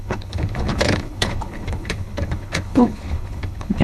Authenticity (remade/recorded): remade